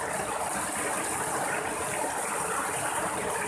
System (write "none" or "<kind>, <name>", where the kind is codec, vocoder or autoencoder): none